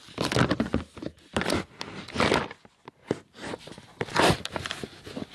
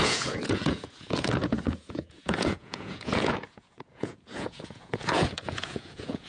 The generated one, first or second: second